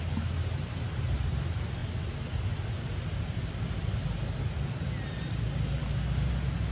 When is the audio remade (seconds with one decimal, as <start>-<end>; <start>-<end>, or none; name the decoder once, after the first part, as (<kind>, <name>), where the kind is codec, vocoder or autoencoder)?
none

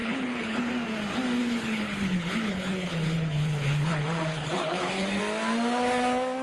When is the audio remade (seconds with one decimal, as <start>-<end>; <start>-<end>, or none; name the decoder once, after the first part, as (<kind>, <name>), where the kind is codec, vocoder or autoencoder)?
0.0-0.7 (codec, HILCodec); 1.4-5.2

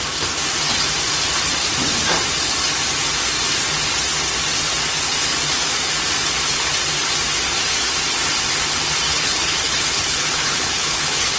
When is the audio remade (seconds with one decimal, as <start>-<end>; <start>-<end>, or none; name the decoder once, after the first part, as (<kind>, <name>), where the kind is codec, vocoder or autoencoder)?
9.1-11.4 (codec, HILCodec)

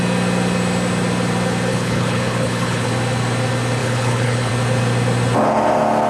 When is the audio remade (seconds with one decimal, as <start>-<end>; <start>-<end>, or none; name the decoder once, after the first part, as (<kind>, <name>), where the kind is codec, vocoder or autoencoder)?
1.7-2.9 (codec, HILCodec); 3.8-4.5

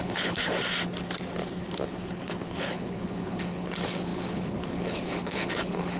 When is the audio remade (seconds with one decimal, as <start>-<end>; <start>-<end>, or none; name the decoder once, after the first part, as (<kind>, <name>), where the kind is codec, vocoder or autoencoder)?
0.0-0.4 (codec, HILCodec); 2.0-6.0